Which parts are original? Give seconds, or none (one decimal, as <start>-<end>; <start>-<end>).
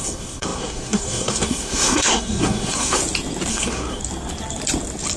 3.0-3.5; 4.0-5.2